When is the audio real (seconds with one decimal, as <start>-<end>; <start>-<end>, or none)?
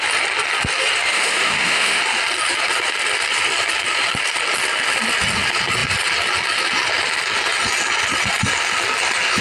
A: 0.0-1.1; 2.0-9.4